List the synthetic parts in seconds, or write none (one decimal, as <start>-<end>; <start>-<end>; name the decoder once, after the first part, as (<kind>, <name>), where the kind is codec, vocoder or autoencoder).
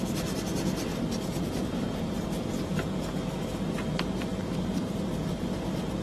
0.9-2.2 (vocoder, BigVGAN v2); 4.3-5.6